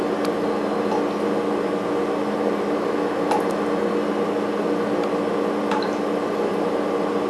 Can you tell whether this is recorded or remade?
recorded